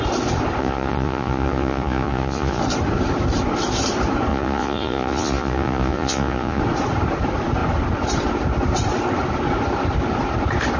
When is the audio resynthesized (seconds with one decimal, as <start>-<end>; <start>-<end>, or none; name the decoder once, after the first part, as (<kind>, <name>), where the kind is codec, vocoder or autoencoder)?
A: 0.6-2.6 (vocoder, Vocos); 4.3-6.6